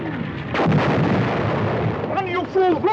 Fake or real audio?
real